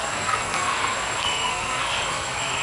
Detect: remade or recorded remade